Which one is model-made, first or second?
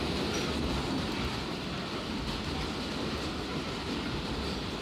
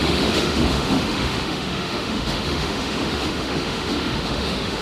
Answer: second